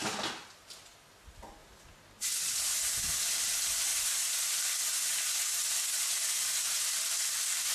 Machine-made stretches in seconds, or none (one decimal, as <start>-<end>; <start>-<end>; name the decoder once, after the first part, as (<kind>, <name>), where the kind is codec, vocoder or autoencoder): none